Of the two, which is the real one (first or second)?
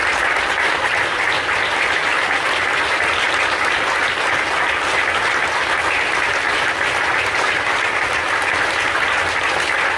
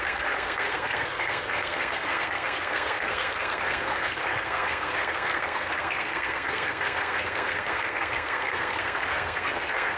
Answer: first